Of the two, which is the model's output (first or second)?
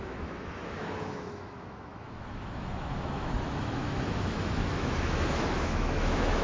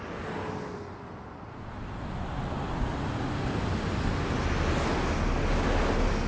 first